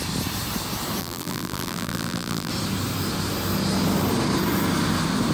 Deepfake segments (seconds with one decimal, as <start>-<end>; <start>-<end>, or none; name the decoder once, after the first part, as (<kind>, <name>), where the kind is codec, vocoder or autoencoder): 1.0-2.5 (vocoder, BigVGAN v2)